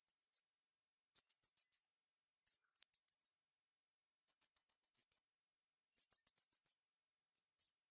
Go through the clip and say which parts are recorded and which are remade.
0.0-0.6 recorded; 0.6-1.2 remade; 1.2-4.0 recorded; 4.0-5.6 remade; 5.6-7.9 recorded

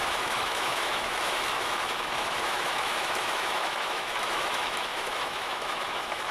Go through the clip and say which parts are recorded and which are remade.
0.0-6.3 remade